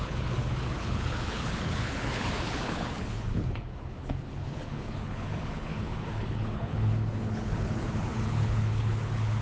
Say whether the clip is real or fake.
fake